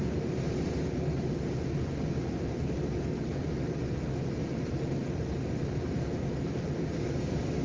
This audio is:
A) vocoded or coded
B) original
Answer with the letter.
B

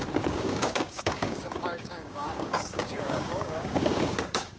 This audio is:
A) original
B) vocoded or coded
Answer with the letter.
B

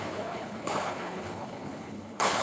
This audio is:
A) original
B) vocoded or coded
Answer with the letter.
B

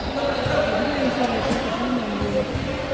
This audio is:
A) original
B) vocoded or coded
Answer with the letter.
A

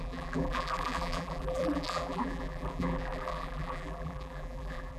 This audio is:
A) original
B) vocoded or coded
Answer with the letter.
B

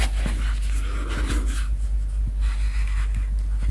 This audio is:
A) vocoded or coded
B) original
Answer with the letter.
B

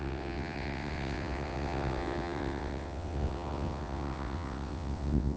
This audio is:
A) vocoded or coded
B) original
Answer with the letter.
A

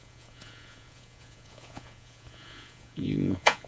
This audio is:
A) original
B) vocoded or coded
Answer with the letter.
B